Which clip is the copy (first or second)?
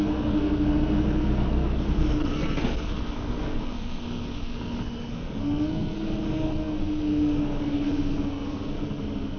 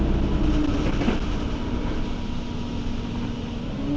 first